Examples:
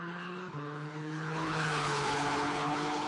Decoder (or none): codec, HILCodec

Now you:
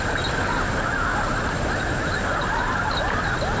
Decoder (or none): none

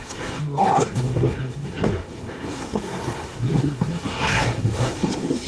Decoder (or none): codec, SNAC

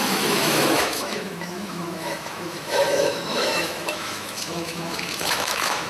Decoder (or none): autoencoder, DAC-VAE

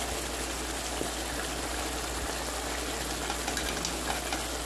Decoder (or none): none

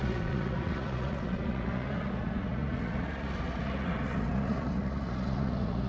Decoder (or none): vocoder, Vocos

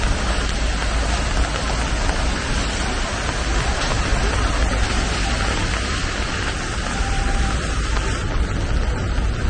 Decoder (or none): none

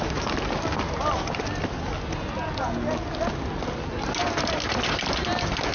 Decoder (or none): none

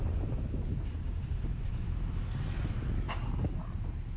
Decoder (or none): none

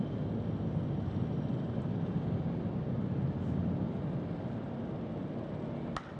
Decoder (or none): none